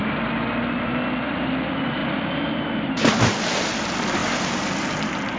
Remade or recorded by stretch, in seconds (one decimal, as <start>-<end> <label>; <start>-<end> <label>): 0.0-5.4 recorded